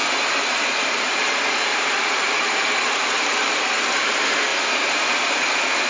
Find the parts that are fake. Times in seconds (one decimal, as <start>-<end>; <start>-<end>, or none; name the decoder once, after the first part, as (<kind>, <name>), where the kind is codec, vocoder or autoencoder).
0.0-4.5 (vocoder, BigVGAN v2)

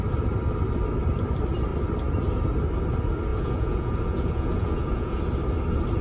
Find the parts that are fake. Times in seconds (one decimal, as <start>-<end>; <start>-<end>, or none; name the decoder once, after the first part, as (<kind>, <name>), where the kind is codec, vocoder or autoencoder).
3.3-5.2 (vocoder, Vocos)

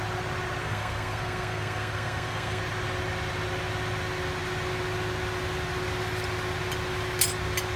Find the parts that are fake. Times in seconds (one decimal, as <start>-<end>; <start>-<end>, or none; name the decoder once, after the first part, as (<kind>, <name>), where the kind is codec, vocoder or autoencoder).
0.6-2.6 (codec, SNAC)

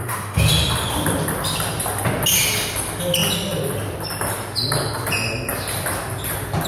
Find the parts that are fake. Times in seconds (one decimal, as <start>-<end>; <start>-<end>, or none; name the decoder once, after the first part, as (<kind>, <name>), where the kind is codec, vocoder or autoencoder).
0.0-0.5 (autoencoder, DAC-VAE)

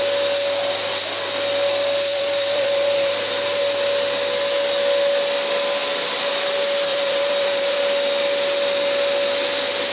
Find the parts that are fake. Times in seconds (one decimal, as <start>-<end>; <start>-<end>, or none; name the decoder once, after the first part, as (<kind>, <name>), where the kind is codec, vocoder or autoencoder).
2.1-3.6 (vocoder, BigVGAN v2); 6.9-7.8

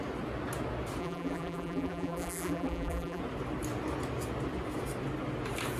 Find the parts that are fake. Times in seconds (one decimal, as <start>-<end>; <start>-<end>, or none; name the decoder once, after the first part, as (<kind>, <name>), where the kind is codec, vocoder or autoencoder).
1.0-3.2 (vocoder, BigVGAN v2)

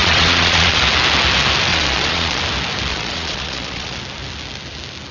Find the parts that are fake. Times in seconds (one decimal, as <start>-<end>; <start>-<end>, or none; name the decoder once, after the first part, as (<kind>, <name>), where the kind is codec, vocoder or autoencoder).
0.0-0.8 (vocoder, Vocos); 1.7-2.4; 2.9-4.0

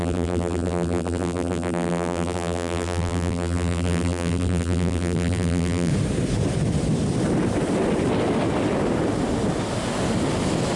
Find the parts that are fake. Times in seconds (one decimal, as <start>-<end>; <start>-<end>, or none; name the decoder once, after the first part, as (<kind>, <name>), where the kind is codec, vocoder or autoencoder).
0.0-5.9 (vocoder, BigVGAN v2)